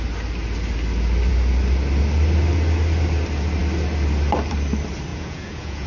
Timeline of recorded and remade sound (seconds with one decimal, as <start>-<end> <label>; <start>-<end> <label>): 0.0-5.1 recorded; 5.1-5.9 remade